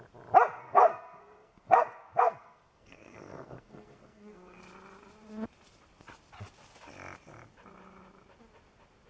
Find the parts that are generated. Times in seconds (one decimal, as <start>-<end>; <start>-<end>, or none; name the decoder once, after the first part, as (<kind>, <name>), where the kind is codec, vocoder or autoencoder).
0.6-4.6 (codec, SNAC)